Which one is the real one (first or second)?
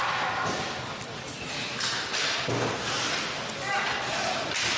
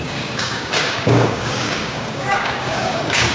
first